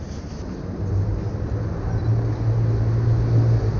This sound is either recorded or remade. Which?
recorded